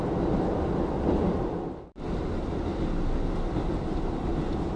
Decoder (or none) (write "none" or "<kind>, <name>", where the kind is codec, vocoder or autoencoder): none